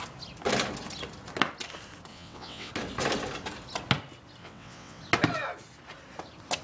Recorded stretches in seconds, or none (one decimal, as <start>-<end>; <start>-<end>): 0.0-2.1; 2.7-4.4; 5.0-6.6